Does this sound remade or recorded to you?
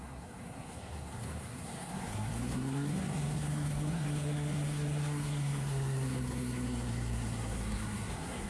remade